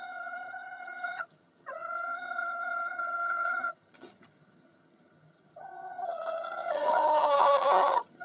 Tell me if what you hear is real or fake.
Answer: fake